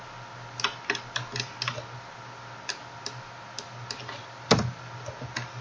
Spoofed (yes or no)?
no